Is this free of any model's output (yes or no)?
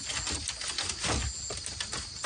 yes